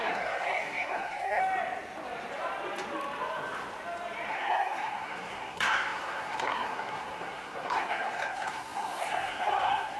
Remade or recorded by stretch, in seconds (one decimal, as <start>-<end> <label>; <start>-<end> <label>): 0.0-1.4 remade; 1.4-4.3 recorded; 4.3-10.0 remade